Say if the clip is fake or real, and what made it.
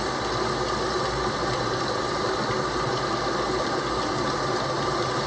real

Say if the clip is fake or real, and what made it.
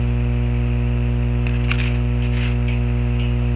real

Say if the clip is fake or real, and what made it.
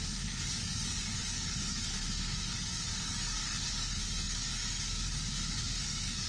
fake, codec, DAC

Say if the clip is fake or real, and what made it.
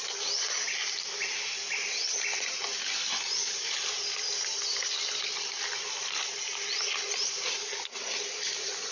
real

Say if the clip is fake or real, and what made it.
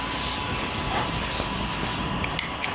real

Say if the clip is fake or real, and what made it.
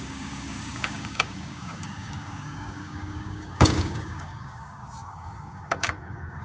fake, codec, DAC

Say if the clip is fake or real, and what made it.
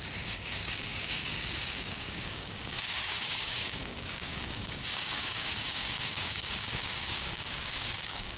fake, codec, DAC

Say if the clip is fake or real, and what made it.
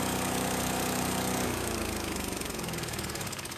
fake, codec, DAC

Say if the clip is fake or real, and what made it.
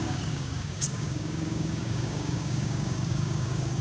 fake, codec, DAC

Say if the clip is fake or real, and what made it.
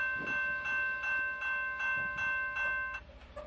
real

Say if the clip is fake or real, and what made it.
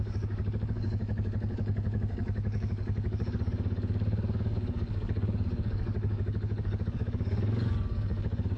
fake, codec, DAC